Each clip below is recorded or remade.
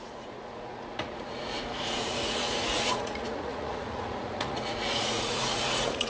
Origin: remade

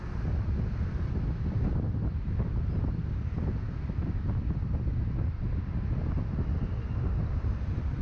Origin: recorded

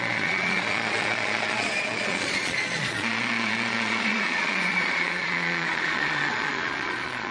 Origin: remade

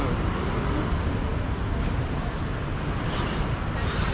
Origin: recorded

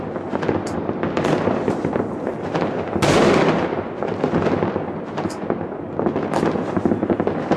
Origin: recorded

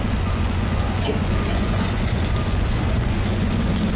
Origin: remade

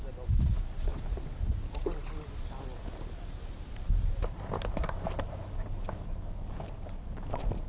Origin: recorded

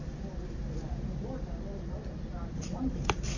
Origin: recorded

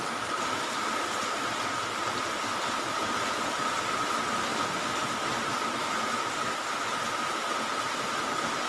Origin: recorded